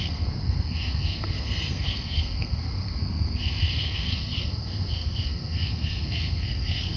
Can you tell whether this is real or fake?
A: fake